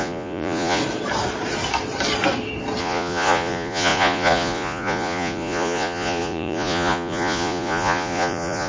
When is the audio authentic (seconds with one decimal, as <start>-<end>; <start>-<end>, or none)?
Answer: 0.8-2.8